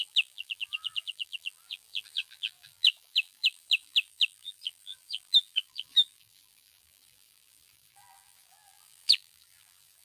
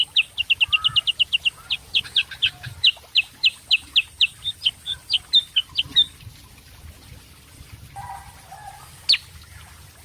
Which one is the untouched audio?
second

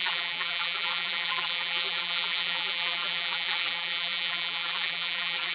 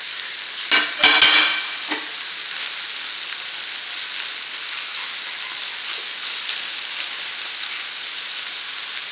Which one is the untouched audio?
second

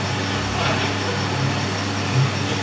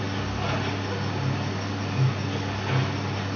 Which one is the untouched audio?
second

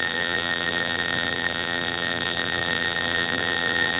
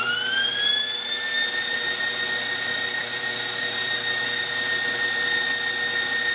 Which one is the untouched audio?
second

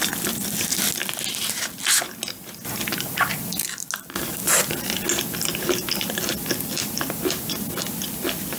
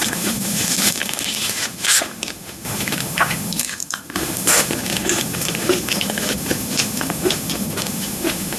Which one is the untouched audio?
first